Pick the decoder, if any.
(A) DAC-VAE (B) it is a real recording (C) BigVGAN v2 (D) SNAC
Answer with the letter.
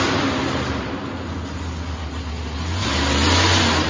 B